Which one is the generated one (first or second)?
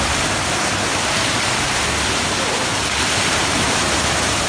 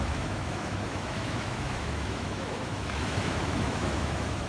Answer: second